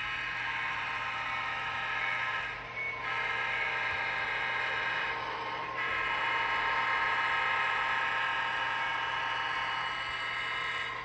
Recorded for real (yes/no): yes